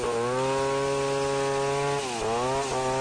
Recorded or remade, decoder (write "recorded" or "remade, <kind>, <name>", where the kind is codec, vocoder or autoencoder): recorded